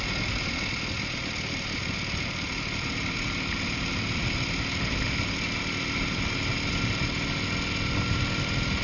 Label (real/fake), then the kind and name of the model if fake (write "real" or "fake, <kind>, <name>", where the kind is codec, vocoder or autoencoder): real